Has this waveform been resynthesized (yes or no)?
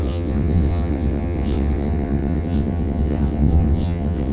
yes